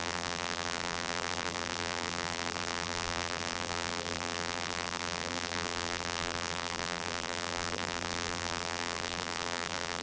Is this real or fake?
fake